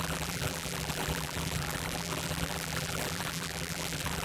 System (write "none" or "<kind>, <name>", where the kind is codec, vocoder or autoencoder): vocoder, BigVGAN v2